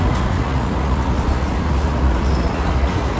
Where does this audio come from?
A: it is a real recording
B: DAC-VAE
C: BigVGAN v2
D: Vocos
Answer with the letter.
D